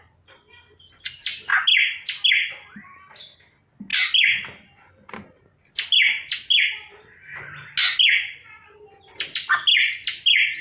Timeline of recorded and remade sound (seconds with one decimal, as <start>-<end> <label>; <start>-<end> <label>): 0.0-10.6 recorded